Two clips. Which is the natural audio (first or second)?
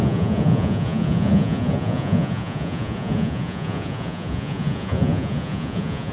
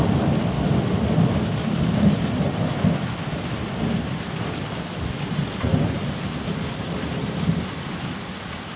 second